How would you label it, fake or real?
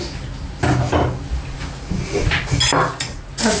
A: real